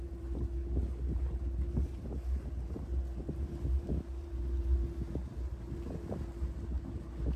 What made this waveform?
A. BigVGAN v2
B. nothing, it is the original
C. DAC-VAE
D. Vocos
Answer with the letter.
B